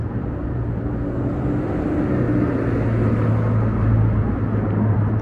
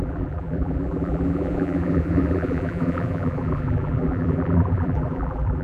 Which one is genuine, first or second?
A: first